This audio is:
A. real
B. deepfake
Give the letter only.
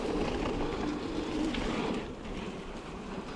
B